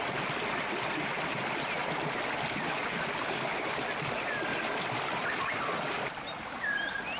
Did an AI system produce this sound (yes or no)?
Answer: no